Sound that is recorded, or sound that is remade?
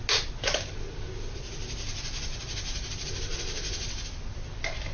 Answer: recorded